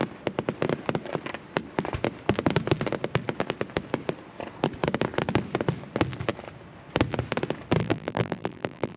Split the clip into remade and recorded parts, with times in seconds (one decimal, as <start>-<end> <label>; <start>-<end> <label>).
0.0-7.8 recorded; 7.8-9.0 remade